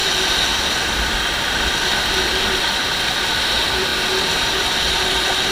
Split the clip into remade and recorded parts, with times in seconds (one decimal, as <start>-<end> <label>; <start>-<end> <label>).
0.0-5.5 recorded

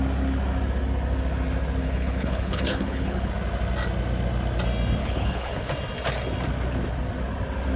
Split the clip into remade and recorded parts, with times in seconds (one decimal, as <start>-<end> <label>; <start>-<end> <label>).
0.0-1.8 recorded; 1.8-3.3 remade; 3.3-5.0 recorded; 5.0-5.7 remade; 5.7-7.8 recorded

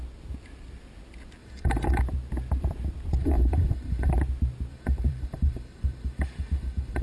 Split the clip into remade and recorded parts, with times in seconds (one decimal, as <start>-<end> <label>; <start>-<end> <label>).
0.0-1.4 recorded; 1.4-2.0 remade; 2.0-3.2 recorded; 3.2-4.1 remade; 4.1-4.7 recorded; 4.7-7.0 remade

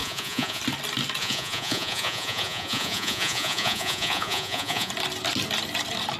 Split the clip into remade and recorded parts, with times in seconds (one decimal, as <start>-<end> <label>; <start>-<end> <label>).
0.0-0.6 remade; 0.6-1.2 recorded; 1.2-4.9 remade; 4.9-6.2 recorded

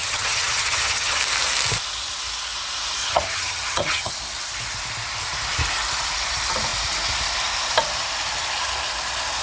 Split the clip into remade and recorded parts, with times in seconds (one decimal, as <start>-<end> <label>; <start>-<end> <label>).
0.0-1.2 remade; 1.2-3.0 recorded; 3.0-4.1 remade; 4.1-9.4 recorded

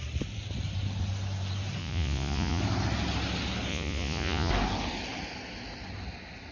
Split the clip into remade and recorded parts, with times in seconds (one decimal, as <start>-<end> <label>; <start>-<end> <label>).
0.0-1.8 recorded; 1.8-2.6 remade; 2.6-3.7 recorded; 3.7-4.5 remade; 4.5-6.5 recorded

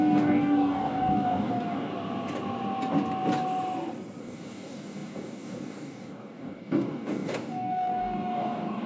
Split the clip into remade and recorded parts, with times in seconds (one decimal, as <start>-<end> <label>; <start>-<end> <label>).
0.0-1.9 remade; 1.9-4.2 recorded; 4.2-8.9 remade

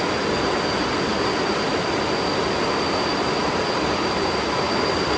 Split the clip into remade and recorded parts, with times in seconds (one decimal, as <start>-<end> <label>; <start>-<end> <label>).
0.0-5.2 recorded